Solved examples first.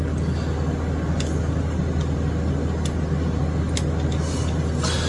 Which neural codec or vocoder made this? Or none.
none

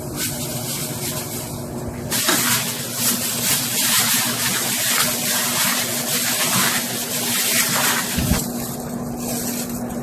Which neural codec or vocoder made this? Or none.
none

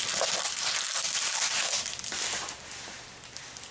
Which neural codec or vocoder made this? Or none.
none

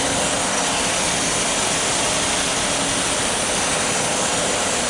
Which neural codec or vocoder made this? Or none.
none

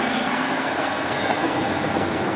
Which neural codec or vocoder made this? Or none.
codec, SNAC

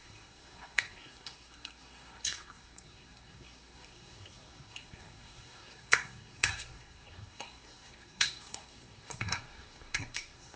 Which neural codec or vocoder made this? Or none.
codec, SNAC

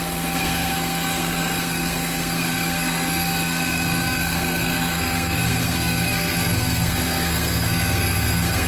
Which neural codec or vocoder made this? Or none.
codec, SNAC